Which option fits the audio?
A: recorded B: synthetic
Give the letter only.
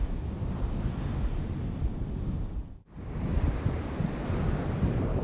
A